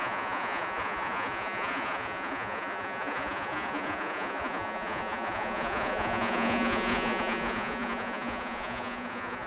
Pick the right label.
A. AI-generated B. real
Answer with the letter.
A